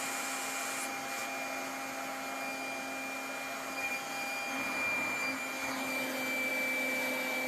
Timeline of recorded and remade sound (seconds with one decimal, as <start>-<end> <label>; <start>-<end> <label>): 0.0-7.5 recorded